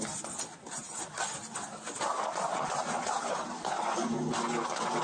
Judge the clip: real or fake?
real